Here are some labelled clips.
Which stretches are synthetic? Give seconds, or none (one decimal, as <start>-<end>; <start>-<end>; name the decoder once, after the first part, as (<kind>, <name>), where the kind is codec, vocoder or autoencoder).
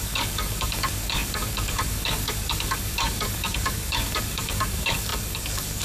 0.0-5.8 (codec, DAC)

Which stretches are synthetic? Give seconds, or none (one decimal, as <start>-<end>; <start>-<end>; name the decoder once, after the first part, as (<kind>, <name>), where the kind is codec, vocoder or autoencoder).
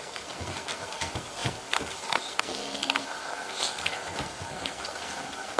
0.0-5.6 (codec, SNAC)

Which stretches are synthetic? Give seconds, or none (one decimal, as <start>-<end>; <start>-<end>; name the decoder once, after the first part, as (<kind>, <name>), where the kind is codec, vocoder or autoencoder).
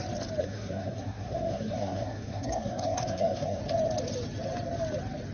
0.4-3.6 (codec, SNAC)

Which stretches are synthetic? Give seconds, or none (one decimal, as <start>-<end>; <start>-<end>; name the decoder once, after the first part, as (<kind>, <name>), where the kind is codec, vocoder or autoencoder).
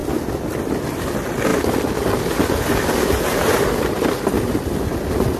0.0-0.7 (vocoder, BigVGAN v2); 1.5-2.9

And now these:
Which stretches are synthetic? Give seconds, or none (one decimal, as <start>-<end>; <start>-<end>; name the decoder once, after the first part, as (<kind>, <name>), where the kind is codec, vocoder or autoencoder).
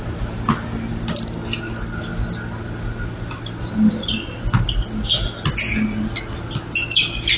none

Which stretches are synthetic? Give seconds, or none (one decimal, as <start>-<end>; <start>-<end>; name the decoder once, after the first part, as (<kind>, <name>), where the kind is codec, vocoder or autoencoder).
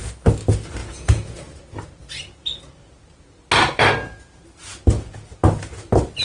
0.8-1.4 (vocoder, Vocos)